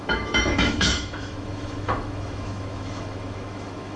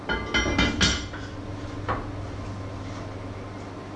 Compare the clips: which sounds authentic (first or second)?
second